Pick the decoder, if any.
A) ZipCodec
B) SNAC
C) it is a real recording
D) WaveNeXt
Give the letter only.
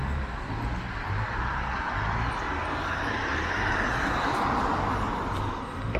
C